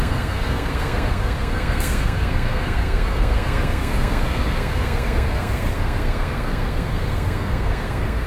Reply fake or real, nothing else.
fake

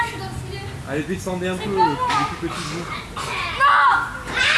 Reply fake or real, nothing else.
real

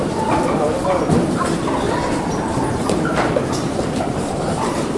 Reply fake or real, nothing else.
fake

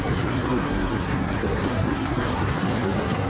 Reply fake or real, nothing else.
fake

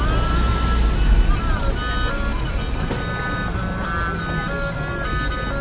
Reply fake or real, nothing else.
real